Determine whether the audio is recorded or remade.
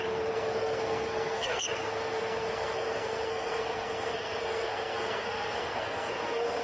remade